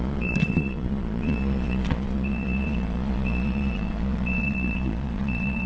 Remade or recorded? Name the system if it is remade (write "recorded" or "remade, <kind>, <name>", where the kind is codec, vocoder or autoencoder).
remade, vocoder, Vocos